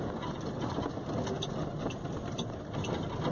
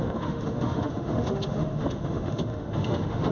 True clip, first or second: first